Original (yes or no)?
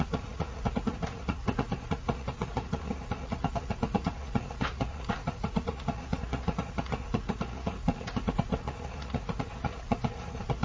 no